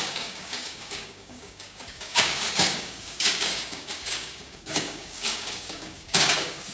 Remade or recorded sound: remade